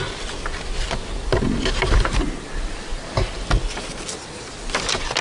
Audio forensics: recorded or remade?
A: recorded